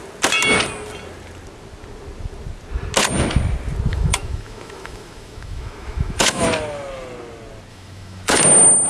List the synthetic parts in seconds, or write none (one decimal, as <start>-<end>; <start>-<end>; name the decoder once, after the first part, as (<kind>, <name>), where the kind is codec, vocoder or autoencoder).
3.9-6.4 (autoencoder, DAC-VAE); 7.7-8.4